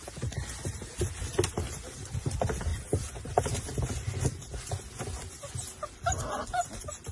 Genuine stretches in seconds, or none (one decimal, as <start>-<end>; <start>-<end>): 0.0-7.1